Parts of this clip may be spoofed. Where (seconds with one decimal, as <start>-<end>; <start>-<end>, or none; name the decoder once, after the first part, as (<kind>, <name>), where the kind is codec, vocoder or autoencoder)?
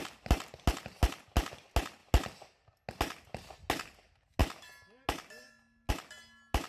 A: none